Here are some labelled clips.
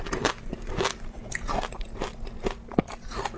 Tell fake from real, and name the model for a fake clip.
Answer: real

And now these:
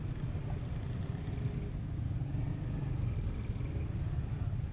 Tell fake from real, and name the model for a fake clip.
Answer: real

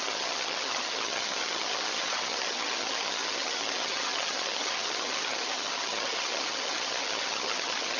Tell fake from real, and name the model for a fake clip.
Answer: fake, vocoder, HiFi-GAN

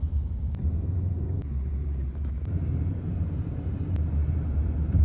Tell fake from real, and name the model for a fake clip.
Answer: fake, vocoder, BigVGAN v2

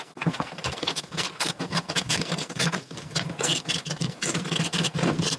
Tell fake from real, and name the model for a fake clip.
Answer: fake, codec, SNAC